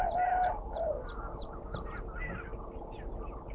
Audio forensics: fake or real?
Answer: real